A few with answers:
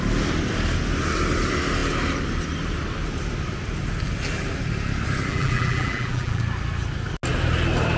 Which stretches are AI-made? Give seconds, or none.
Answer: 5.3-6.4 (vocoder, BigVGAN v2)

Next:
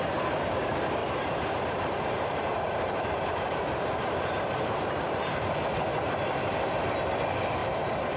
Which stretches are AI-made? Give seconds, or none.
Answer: 1.0-5.4 (vocoder, BigVGAN v2); 7.6-8.2